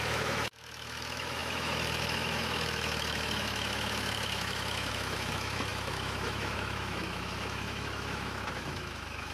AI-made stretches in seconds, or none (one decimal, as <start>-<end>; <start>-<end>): 0.0-9.3